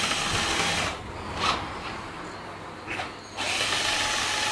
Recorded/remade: recorded